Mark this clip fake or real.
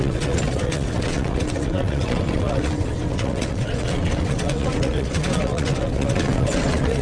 fake